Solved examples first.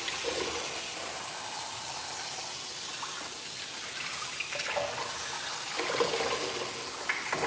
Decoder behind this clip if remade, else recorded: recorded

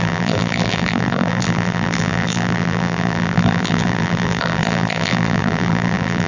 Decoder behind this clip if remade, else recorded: remade, vocoder, BigVGAN v2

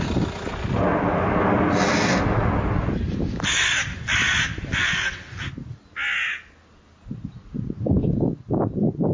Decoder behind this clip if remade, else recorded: recorded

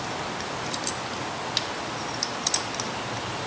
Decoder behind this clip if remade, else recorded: recorded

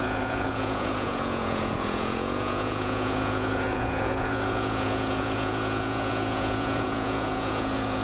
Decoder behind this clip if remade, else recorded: remade, vocoder, Vocos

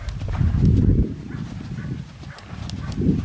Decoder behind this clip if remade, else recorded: recorded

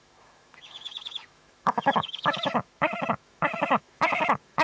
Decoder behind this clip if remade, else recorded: remade, autoencoder, DAC-VAE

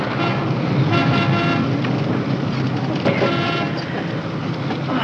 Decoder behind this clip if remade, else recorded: recorded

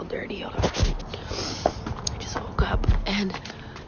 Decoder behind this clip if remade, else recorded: recorded